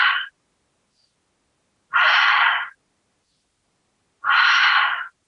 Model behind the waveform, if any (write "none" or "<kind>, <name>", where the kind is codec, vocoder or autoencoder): none